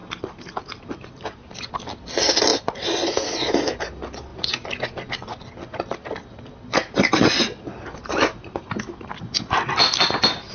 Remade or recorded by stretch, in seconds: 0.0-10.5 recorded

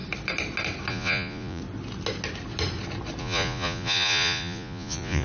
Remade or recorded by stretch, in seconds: 0.0-0.9 recorded; 0.9-1.6 remade; 1.6-3.2 recorded; 3.2-5.2 remade

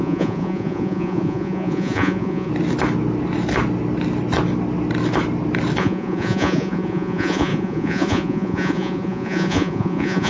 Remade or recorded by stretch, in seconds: 0.0-2.5 remade; 2.5-5.8 recorded; 5.8-10.3 remade

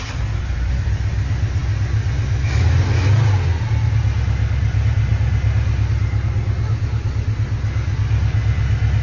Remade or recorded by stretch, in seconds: 0.0-9.0 recorded

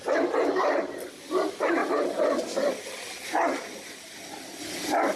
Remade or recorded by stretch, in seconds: 0.0-5.2 recorded